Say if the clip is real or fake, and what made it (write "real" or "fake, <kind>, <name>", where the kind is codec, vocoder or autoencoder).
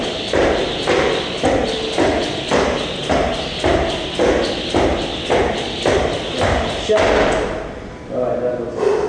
real